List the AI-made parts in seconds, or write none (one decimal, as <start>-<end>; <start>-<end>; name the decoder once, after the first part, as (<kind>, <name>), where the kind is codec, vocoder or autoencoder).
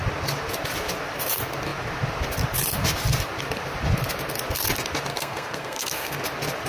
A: 5.1-6.2 (codec, SNAC)